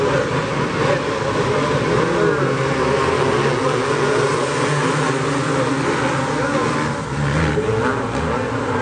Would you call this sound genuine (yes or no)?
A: yes